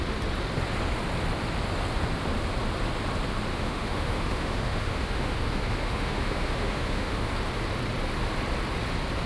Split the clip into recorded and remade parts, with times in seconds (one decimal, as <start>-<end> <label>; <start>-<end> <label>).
0.0-3.5 recorded; 3.5-7.3 remade; 7.3-9.3 recorded